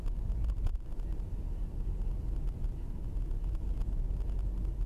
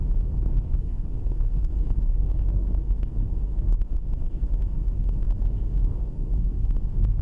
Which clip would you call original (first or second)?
first